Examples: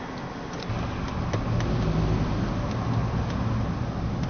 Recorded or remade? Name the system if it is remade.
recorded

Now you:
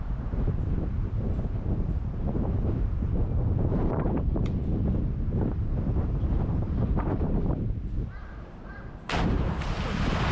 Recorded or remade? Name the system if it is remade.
remade, vocoder, BigVGAN v2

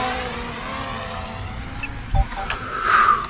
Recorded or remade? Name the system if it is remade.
recorded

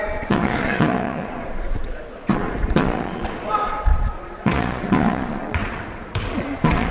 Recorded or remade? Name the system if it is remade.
remade, vocoder, Vocos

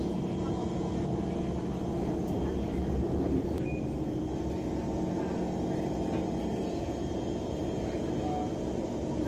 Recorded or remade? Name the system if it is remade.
recorded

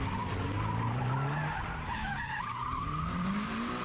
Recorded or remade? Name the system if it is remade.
remade, vocoder, BigVGAN v2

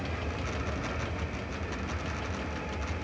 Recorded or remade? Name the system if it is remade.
recorded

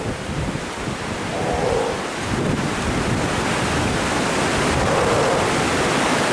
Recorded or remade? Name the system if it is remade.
recorded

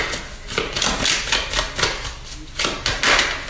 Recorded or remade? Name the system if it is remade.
recorded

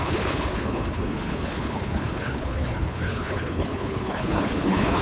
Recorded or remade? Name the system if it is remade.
remade, codec, HILCodec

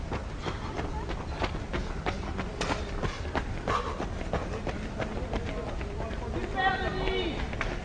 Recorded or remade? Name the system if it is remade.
recorded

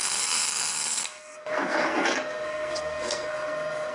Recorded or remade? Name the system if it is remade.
remade, codec, SNAC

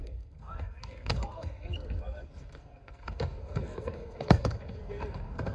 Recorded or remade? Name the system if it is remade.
remade, codec, SNAC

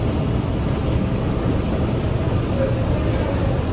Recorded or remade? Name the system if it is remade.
recorded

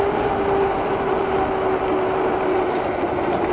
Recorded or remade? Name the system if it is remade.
recorded